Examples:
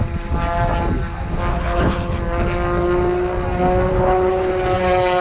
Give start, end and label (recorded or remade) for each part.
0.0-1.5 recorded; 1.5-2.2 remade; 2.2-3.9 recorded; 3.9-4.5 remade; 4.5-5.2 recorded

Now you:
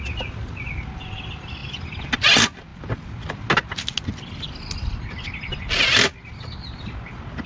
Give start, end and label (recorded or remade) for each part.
0.0-7.5 recorded

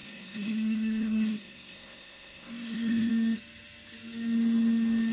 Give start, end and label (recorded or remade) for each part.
0.0-3.1 remade; 3.1-5.1 recorded

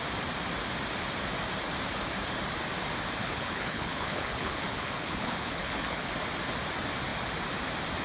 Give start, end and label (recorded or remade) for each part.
0.0-3.2 recorded; 3.2-6.1 remade; 6.1-8.0 recorded

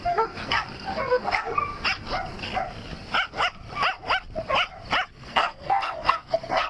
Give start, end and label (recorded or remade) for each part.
0.0-1.6 remade; 1.6-5.1 recorded; 5.1-6.7 remade

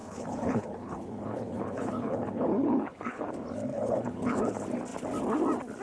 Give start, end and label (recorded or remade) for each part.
0.0-3.3 remade; 3.3-3.7 recorded; 3.7-4.5 remade; 4.5-5.8 recorded

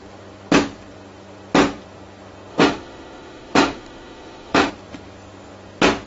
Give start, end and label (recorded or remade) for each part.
0.0-2.5 recorded; 2.5-4.7 remade; 4.7-6.1 recorded